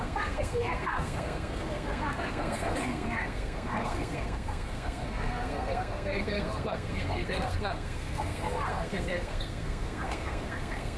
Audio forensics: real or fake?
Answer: fake